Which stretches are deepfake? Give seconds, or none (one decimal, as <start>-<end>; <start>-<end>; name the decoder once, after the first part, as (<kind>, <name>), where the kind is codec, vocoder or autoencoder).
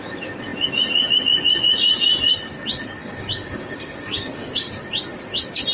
3.0-4.7 (codec, DAC)